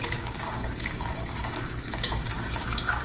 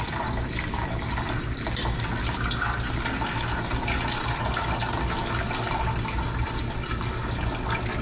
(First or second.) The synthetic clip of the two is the first